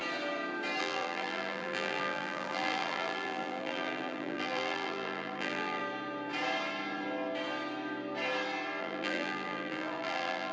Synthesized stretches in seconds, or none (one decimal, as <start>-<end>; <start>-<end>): 0.8-5.8; 8.8-10.5